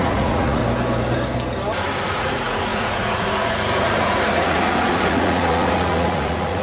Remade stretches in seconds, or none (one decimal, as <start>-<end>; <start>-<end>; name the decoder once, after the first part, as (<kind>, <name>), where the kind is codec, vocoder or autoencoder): 0.0-0.6 (vocoder, Vocos); 2.1-6.6